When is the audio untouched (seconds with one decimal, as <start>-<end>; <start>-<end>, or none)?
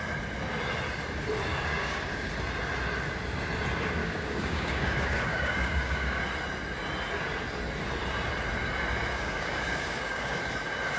0.0-1.5; 2.3-4.0; 6.2-9.1; 10.4-11.0